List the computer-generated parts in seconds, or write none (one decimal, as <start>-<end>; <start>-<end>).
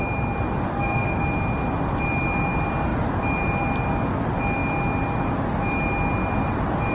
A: 0.7-1.2